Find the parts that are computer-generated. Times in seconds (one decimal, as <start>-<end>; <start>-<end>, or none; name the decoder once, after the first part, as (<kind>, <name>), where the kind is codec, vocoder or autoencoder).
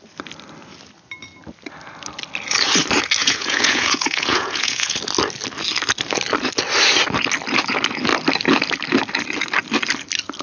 3.2-5.0 (vocoder, Vocos)